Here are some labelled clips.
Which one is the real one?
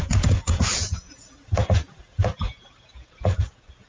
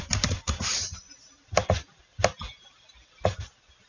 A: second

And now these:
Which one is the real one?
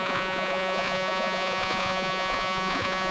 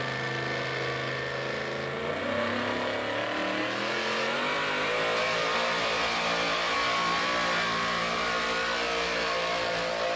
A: second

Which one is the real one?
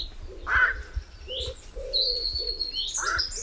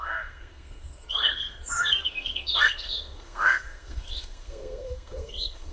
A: first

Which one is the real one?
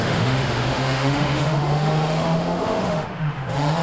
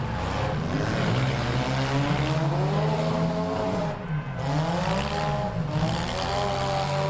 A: second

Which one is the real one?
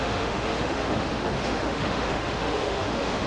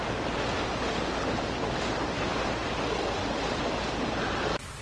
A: second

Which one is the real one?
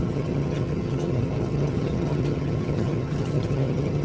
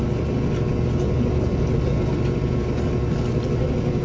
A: second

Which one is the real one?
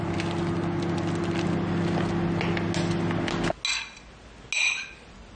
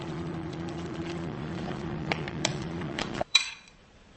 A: first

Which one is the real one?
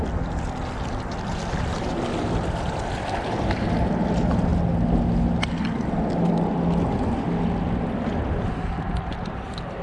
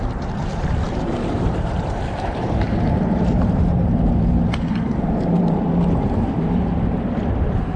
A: first